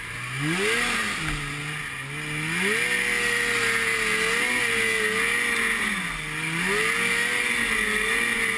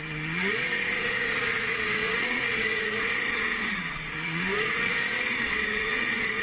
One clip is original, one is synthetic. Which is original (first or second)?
first